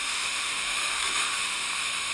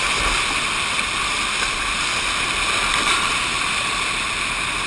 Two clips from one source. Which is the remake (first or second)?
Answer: first